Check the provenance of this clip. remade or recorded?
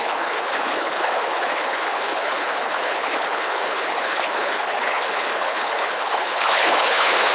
remade